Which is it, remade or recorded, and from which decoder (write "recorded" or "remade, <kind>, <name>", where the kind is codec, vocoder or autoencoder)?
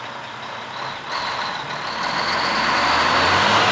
recorded